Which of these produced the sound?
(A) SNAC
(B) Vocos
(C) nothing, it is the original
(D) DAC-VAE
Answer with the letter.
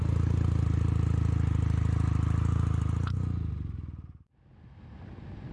C